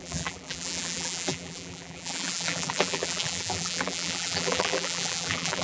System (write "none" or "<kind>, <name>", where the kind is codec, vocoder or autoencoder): vocoder, BigVGAN v2